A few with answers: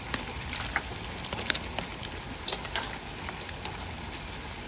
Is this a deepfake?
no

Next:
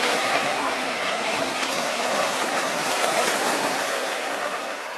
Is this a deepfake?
yes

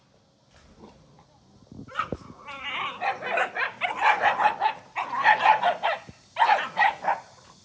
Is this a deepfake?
no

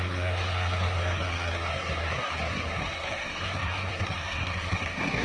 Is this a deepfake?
yes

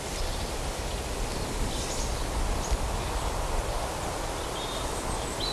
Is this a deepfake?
no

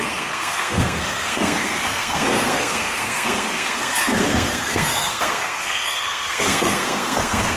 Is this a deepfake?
yes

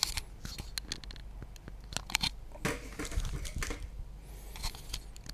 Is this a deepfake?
no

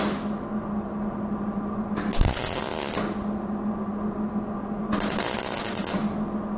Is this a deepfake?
no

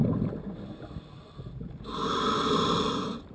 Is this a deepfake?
no